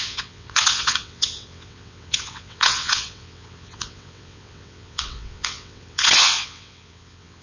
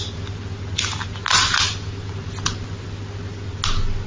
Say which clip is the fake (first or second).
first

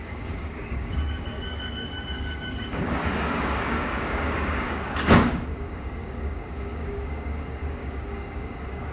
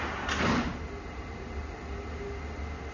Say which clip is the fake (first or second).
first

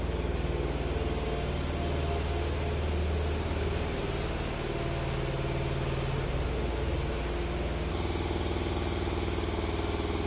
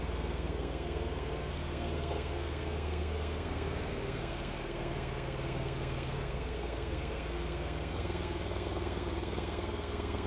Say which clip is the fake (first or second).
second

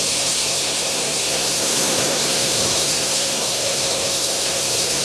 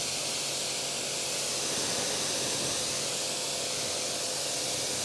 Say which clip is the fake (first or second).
first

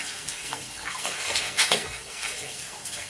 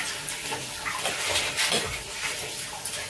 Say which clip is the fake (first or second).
first